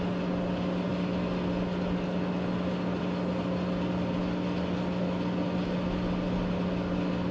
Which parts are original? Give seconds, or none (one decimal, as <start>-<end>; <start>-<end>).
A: 0.0-7.3